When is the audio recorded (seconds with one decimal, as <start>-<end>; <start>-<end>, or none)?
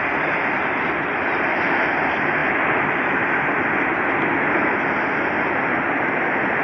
0.0-6.6